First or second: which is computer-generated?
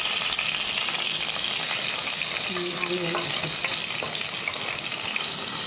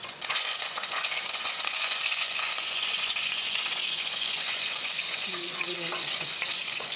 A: second